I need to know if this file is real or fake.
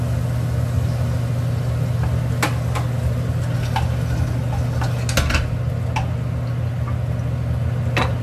real